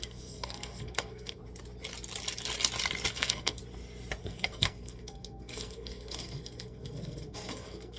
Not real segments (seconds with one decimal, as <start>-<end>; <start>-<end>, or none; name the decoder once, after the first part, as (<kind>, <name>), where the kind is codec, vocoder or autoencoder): 0.0-1.4 (codec, SNAC); 3.1-3.6; 4.2-8.0